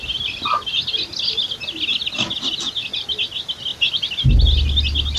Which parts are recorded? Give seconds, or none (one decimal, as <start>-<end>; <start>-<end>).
0.7-5.2